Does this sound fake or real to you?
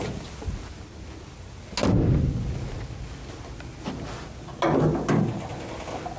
real